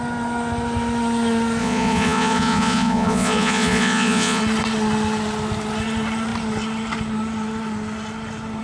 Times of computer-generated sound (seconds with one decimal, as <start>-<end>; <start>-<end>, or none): 1.6-4.4